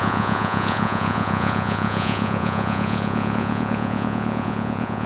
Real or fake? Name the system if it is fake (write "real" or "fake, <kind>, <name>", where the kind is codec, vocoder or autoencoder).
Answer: fake, vocoder, Vocos